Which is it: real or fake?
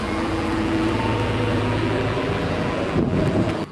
fake